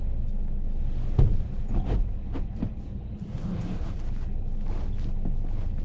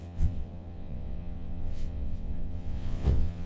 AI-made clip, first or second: second